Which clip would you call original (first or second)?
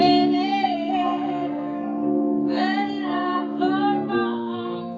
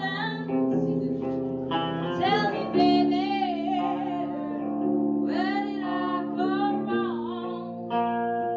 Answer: second